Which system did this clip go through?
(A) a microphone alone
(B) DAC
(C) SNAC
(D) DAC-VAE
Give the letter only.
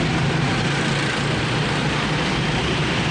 A